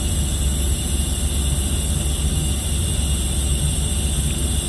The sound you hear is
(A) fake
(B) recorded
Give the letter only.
B